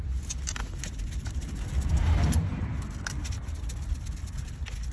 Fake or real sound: real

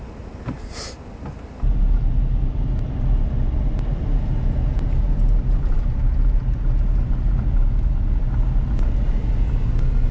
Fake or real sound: real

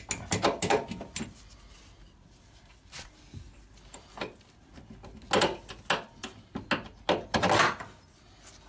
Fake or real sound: real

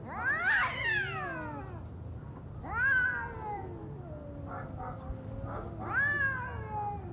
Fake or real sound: real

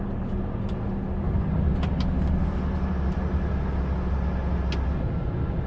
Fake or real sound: real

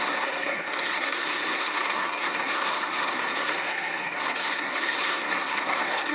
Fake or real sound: fake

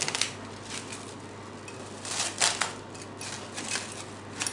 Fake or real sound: real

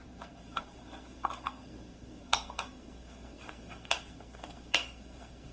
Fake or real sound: fake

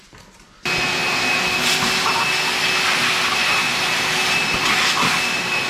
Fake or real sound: real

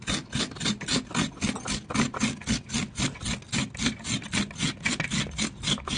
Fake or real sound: real